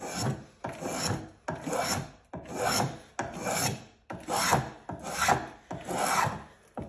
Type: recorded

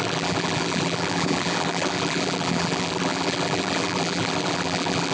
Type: remade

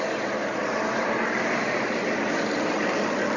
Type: recorded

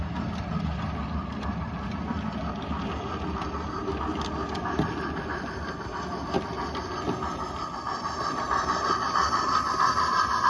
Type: recorded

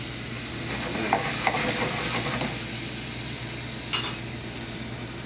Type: recorded